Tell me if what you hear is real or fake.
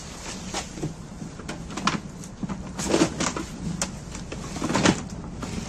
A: real